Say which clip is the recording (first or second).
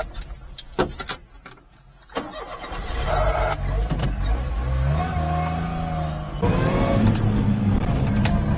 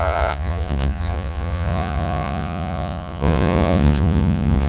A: first